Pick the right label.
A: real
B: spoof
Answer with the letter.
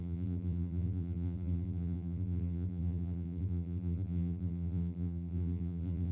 B